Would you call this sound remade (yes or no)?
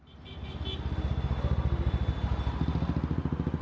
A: no